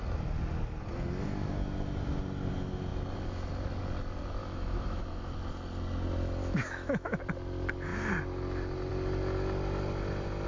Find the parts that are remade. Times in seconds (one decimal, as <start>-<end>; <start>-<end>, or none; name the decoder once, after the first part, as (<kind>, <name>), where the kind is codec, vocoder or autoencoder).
4.4-5.3 (autoencoder, DAC-VAE); 6.4-7.2

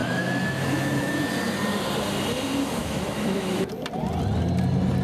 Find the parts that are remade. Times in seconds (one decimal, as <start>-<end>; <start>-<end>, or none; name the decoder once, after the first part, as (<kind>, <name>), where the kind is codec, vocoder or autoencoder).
0.0-1.3 (autoencoder, DAC-VAE); 2.8-3.7